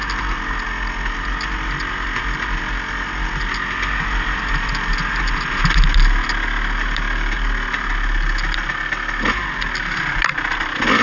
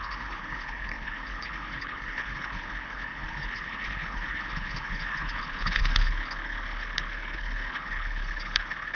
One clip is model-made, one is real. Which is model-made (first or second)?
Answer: second